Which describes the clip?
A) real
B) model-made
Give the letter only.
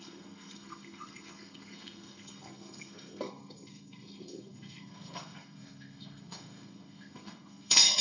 B